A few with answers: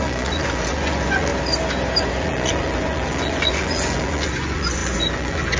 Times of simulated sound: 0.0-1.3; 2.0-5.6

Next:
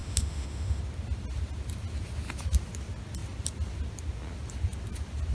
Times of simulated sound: 0.0-0.8

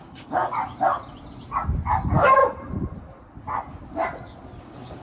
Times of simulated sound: 0.0-0.6; 1.9-2.4; 4.6-5.0

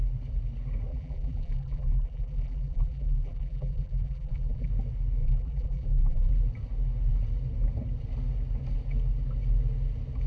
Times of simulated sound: 0.9-4.7; 5.2-6.3